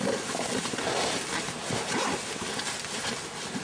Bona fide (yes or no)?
yes